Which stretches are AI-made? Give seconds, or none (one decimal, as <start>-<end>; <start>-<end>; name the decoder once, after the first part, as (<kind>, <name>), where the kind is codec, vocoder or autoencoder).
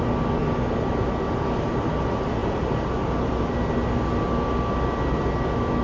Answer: none